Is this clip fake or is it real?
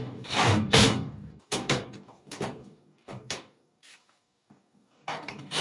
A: fake